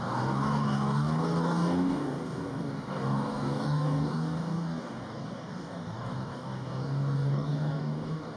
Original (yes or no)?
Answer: no